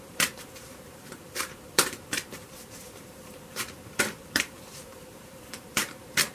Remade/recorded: remade